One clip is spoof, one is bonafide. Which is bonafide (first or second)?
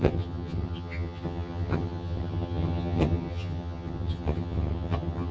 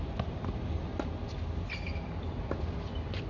second